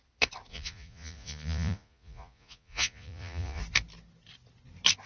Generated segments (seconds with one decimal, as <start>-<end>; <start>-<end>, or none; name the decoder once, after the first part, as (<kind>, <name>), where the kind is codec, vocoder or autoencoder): 0.5-3.6 (vocoder, Vocos)